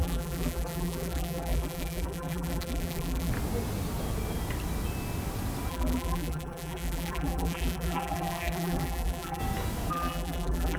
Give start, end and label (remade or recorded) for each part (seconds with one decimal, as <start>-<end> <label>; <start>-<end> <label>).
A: 0.0-3.3 remade; 3.3-5.7 recorded; 5.7-9.4 remade; 9.4-9.9 recorded; 9.9-10.8 remade